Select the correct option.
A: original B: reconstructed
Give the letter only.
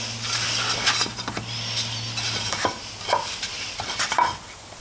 A